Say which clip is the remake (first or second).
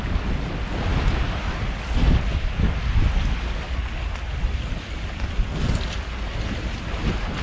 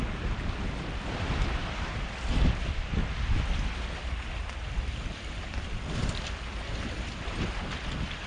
second